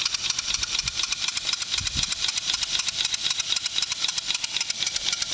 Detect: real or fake real